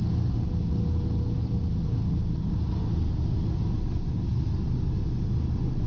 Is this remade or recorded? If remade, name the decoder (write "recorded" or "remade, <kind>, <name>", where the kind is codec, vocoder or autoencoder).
recorded